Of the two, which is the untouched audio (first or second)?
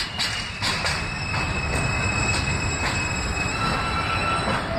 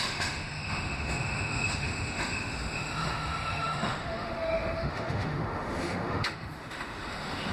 first